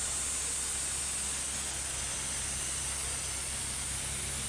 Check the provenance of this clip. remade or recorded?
recorded